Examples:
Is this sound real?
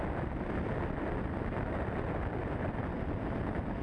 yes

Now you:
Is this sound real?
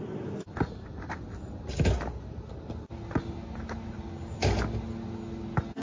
yes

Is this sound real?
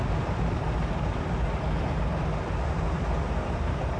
yes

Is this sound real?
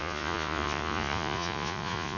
no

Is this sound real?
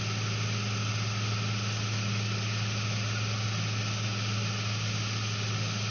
yes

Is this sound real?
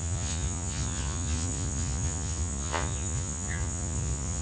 no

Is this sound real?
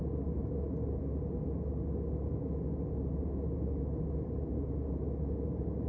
yes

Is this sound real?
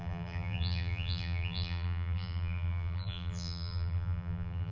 no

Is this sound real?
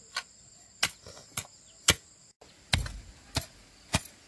yes